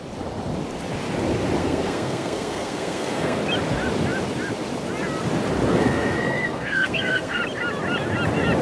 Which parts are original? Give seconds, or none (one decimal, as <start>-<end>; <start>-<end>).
0.0-1.6; 3.4-5.7; 7.4-8.6

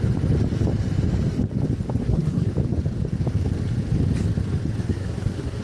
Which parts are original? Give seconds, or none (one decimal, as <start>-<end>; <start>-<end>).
0.0-2.0; 2.5-4.8

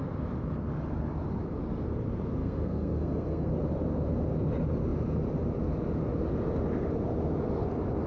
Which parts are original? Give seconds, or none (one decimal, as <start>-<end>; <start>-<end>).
0.0-2.4; 3.5-8.1

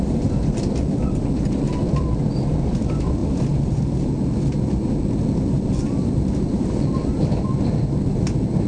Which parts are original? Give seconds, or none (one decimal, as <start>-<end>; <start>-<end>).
0.0-8.7

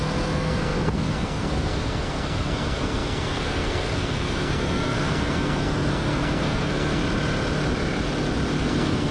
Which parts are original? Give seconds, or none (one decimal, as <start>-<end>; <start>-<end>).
7.0-8.6

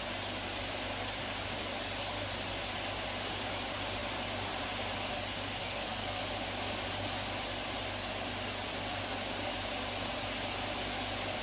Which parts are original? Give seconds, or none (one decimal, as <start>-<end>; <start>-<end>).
0.0-5.6; 6.2-11.4